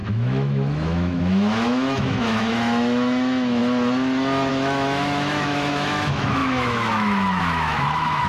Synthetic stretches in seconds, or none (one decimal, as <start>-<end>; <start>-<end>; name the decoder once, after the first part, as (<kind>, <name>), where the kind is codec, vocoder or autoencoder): 0.0-3.6 (autoencoder, DAC-VAE); 4.5-8.3